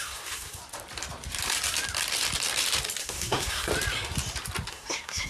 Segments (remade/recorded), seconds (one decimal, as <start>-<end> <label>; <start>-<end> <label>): 0.0-0.6 remade; 0.6-3.0 recorded; 3.0-3.7 remade; 3.7-4.7 recorded; 4.7-5.3 remade